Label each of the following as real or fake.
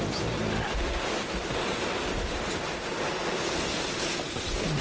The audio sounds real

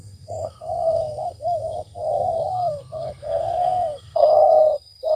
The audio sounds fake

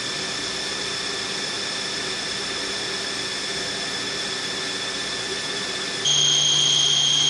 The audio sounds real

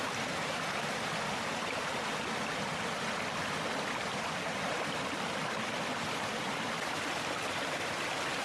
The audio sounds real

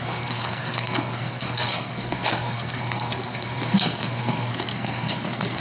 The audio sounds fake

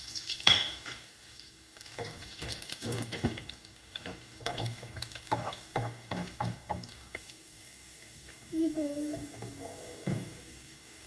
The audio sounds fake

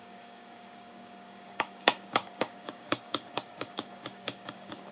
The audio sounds fake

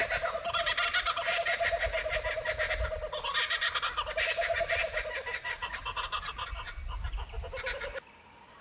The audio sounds real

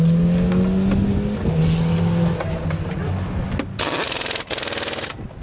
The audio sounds real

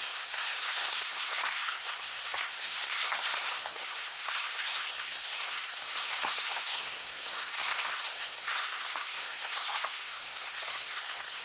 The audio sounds fake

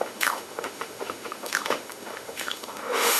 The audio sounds fake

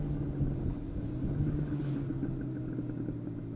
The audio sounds real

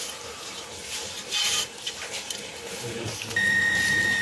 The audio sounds fake